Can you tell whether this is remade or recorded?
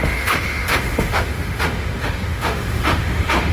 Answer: remade